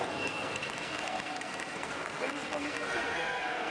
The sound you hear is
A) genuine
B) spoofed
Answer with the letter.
B